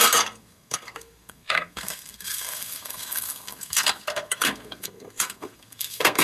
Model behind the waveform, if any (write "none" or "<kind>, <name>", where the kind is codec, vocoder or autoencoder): codec, SNAC